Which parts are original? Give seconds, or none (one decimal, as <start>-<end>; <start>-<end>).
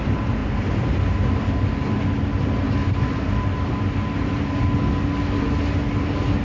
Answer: 0.0-6.4